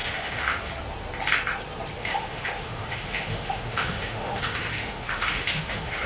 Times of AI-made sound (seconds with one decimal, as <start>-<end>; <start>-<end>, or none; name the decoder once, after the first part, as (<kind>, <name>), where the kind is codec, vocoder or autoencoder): 0.0-0.7 (autoencoder, DAC-VAE); 2.0-6.1